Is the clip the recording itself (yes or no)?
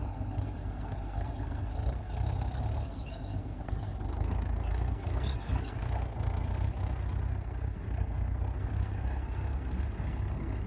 no